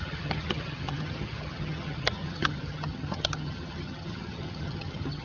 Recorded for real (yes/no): no